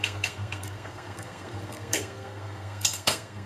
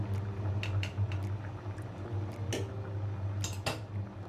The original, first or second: second